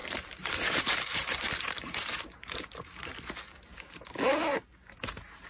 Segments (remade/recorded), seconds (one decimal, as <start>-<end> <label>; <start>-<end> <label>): 0.0-3.3 remade; 3.3-5.5 recorded